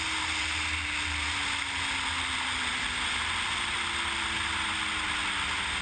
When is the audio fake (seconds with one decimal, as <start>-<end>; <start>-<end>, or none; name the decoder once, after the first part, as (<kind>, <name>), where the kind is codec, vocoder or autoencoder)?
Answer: none